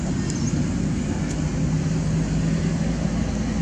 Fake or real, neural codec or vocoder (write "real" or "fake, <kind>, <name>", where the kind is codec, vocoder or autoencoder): real